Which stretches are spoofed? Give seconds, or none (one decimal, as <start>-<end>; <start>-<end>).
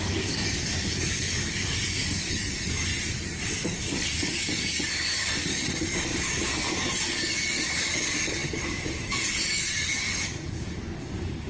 0.0-2.9; 3.5-11.5